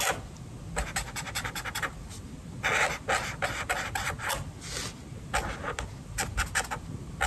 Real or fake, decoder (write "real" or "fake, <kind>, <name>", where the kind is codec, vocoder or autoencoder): real